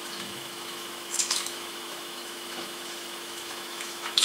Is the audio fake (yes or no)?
yes